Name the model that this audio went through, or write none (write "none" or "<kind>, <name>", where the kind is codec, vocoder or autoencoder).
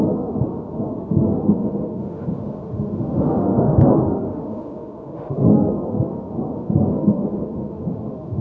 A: autoencoder, DAC-VAE